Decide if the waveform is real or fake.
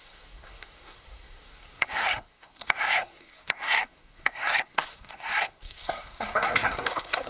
fake